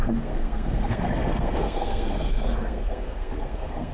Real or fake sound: fake